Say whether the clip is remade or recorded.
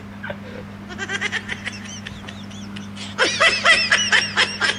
recorded